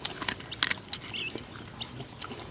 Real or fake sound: real